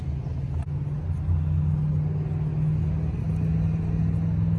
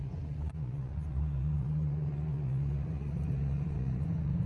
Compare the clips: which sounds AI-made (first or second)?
second